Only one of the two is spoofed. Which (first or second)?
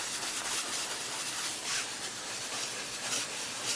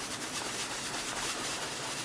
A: second